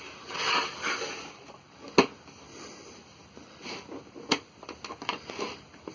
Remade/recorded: recorded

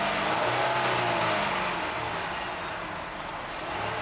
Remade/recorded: recorded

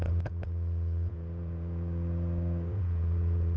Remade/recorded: remade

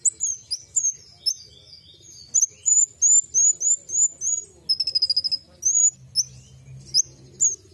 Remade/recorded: recorded